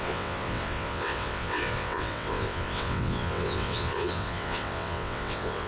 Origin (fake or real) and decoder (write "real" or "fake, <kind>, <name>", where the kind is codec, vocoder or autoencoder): fake, vocoder, WaveNeXt